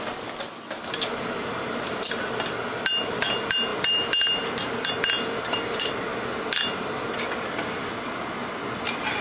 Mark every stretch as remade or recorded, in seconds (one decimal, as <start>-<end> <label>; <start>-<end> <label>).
0.0-9.2 recorded